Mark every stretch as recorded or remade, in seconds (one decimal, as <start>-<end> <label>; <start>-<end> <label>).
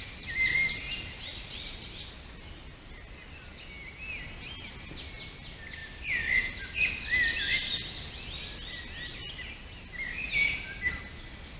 0.0-11.6 recorded